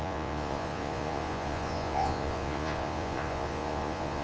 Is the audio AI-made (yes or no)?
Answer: yes